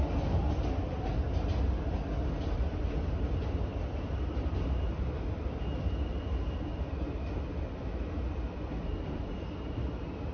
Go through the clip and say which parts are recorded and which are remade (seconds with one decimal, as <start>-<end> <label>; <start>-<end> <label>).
0.0-10.3 recorded